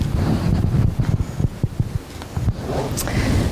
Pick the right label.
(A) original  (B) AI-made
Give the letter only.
A